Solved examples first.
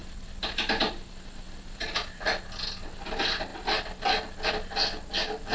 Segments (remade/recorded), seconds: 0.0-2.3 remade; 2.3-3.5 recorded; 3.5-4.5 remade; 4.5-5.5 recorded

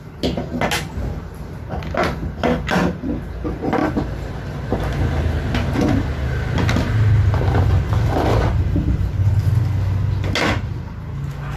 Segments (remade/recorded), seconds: 0.0-3.8 recorded; 3.8-4.8 remade; 4.8-11.6 recorded

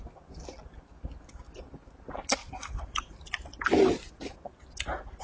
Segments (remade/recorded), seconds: 0.0-5.2 recorded

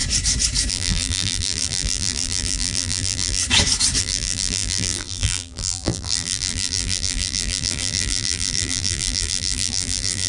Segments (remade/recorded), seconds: 0.0-0.7 recorded; 0.7-3.4 remade; 3.4-4.0 recorded; 4.0-10.3 remade

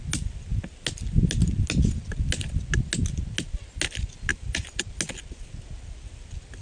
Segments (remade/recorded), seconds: 0.0-4.3 recorded; 4.3-4.8 remade; 4.8-6.6 recorded

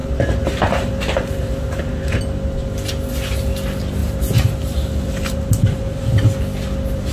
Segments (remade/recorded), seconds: 0.0-2.2 remade; 2.2-4.0 recorded; 4.0-6.0 remade; 6.0-7.1 recorded